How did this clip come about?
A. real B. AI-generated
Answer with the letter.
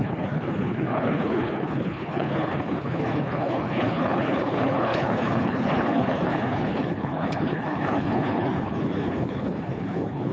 B